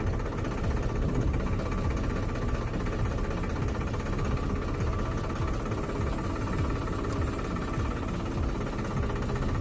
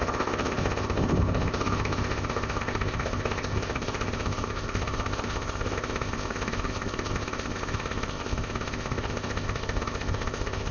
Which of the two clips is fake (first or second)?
second